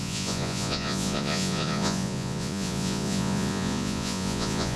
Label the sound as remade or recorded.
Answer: remade